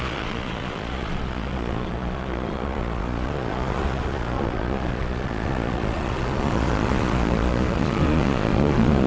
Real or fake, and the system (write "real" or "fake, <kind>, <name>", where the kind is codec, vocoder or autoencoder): fake, vocoder, Vocos